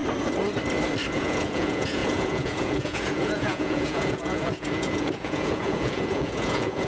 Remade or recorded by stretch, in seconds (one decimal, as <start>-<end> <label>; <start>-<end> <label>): 0.0-1.1 recorded; 1.1-6.9 remade